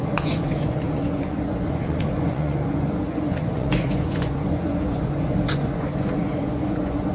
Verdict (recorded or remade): remade